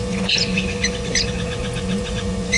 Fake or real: fake